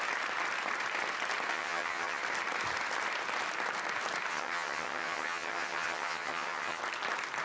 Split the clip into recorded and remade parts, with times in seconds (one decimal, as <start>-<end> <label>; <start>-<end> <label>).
0.0-1.5 recorded; 1.5-2.2 remade; 2.2-4.3 recorded; 4.3-6.8 remade; 6.8-7.4 recorded